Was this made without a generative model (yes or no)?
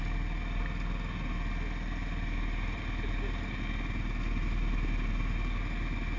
yes